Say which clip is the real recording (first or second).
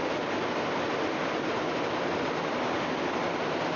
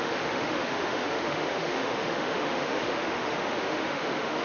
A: first